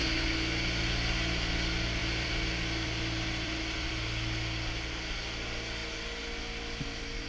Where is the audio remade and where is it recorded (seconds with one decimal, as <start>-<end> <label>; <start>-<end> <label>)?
0.0-2.0 recorded; 2.0-3.9 remade; 3.9-7.3 recorded